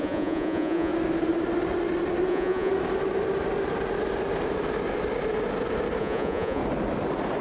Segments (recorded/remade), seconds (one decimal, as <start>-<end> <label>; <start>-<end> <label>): 0.0-0.9 remade; 0.9-2.3 recorded; 2.3-2.7 remade; 2.7-6.0 recorded; 6.0-6.6 remade; 6.6-7.4 recorded

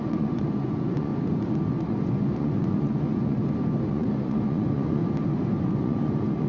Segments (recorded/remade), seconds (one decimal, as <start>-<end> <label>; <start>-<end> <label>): 0.0-1.1 remade; 1.1-1.7 recorded; 1.7-3.4 remade; 3.4-3.9 recorded; 3.9-5.0 remade; 5.0-5.6 recorded; 5.6-6.5 remade